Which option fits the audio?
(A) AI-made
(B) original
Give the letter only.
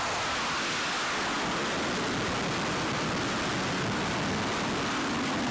B